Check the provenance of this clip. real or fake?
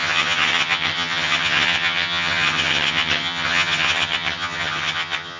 fake